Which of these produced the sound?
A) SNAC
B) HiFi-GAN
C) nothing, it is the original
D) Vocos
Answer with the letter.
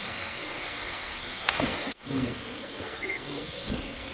A